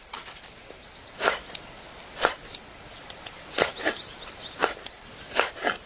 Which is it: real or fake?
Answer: real